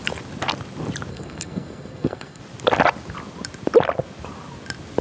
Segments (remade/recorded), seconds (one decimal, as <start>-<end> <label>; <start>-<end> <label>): 0.0-1.1 recorded; 1.1-2.4 remade; 2.4-5.0 recorded